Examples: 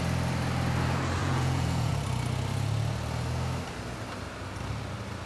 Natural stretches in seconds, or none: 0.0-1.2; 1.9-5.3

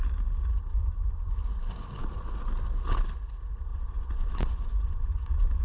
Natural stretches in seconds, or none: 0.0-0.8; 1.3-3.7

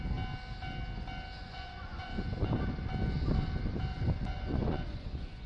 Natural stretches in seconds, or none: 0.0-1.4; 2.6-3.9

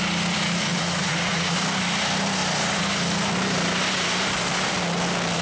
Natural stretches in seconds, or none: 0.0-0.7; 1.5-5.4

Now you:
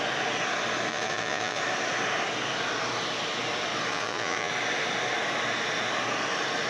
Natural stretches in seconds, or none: 0.0-0.9; 1.6-3.9; 4.5-6.7

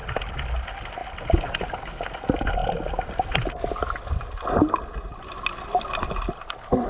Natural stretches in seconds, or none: 0.0-6.9